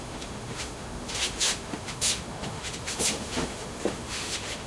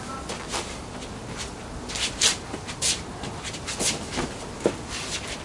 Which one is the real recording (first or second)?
second